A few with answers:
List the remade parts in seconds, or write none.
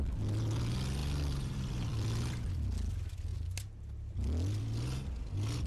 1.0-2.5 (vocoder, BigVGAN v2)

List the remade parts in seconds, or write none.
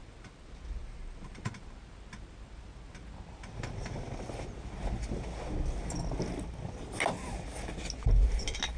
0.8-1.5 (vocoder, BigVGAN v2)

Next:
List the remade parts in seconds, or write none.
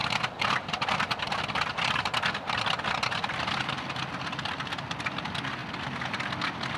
0.0-4.1 (vocoder, BigVGAN v2)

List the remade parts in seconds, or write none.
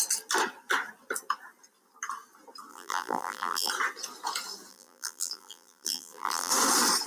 2.7-3.7 (vocoder, BigVGAN v2); 4.7-6.5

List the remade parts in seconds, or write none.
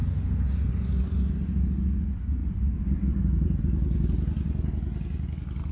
2.4-3.6 (vocoder, BigVGAN v2)